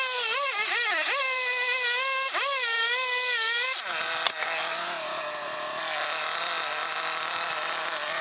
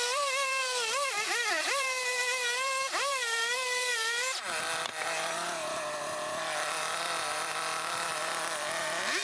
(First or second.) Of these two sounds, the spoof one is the second